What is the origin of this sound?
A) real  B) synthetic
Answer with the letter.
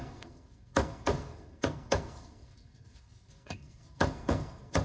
B